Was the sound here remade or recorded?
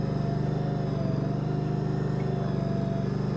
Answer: recorded